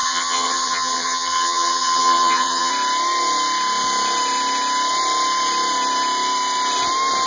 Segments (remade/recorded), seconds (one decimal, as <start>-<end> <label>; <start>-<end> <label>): 0.0-2.7 remade; 2.7-7.3 recorded